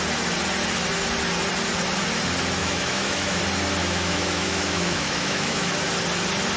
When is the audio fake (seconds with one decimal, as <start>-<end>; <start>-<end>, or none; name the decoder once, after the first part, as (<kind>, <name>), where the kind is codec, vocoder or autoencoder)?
2.6-3.4 (autoencoder, DAC-VAE); 3.8-5.7